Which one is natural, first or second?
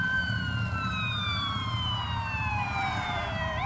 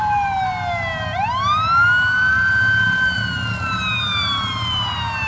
second